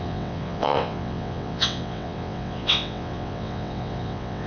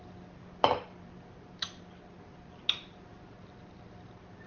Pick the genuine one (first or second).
second